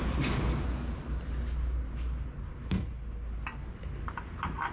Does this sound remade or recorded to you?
recorded